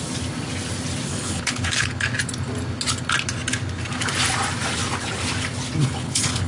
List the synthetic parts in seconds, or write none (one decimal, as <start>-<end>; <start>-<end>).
1.1-2.0; 5.8-6.5